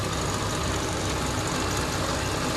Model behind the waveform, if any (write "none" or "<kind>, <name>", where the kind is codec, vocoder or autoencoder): none